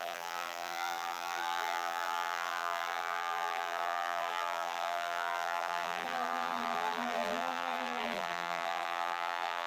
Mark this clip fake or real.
fake